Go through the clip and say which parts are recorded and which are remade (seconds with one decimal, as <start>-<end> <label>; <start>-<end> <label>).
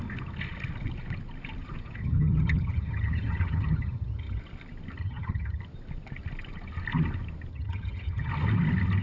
0.0-2.0 recorded; 2.0-4.4 remade; 4.4-5.0 recorded; 5.0-5.6 remade; 5.6-7.5 recorded; 7.5-8.3 remade; 8.3-9.0 recorded